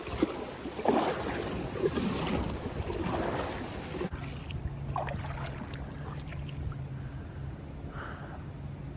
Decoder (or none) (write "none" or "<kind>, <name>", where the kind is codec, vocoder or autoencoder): none